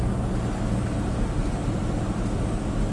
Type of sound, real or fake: real